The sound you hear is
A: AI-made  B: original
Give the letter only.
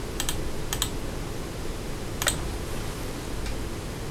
B